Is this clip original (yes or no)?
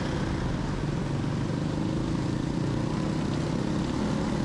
yes